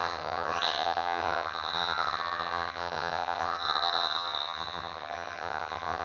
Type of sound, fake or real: fake